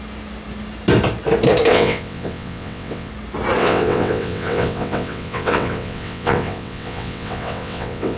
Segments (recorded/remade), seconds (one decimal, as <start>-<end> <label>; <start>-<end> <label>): 0.0-1.7 recorded; 1.7-3.1 remade; 3.1-3.6 recorded; 3.6-8.2 remade